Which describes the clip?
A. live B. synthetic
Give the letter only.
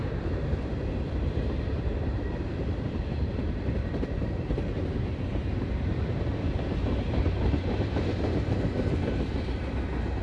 B